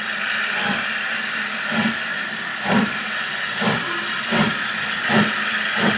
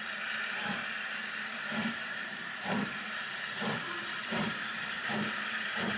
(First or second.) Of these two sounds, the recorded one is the first